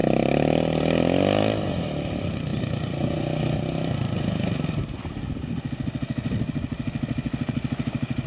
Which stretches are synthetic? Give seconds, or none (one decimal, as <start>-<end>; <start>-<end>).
none